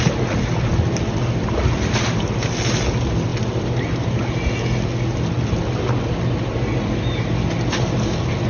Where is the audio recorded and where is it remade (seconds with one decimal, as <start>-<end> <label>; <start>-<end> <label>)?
0.0-8.5 recorded